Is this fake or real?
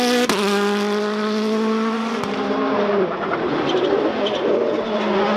real